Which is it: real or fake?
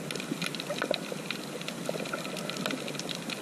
real